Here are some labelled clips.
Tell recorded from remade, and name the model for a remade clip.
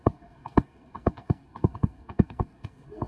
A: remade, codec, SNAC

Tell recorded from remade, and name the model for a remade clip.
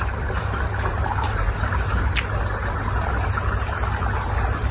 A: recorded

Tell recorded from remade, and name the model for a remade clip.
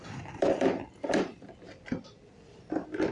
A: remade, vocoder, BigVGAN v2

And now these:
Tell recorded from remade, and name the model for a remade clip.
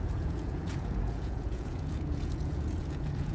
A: remade, vocoder, Vocos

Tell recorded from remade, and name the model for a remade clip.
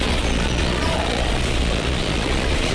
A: remade, vocoder, Vocos